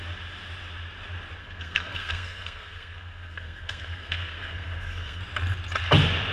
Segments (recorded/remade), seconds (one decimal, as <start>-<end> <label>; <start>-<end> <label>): 0.0-1.4 recorded; 1.4-5.2 remade; 5.2-6.3 recorded